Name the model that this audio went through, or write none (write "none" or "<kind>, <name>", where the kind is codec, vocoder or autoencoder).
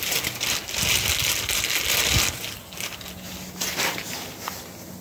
none